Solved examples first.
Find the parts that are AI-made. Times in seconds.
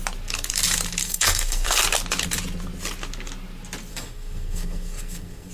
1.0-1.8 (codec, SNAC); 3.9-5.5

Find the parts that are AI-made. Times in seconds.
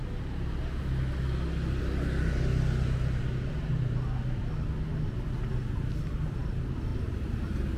6.9-7.8 (vocoder, BigVGAN v2)